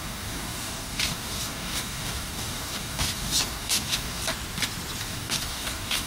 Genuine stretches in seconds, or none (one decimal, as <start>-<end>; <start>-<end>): 4.2-5.0